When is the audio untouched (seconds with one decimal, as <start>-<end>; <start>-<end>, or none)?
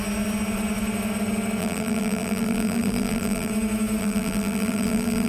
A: 0.0-1.6; 3.5-4.0